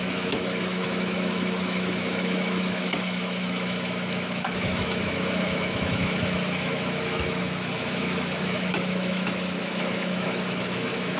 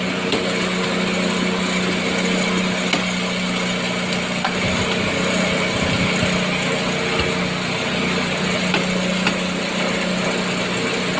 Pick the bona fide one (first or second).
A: second